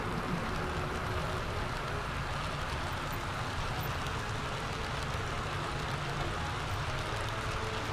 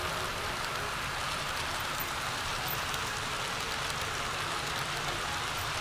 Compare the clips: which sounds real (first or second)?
first